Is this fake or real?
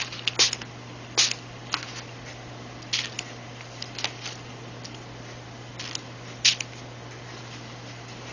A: real